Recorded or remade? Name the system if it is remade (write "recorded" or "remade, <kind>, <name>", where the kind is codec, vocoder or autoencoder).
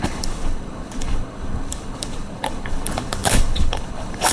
remade, codec, HILCodec